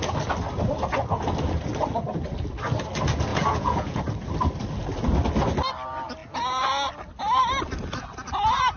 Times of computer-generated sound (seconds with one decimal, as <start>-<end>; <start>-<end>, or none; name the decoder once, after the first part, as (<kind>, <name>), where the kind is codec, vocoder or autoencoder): 3.3-4.0 (vocoder, Vocos)